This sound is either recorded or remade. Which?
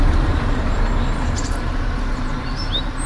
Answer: remade